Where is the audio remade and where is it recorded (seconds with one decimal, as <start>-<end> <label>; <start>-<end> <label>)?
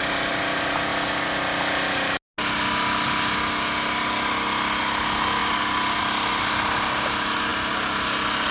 0.0-8.5 recorded